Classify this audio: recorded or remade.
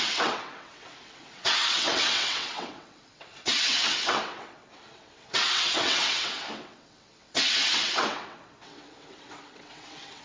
remade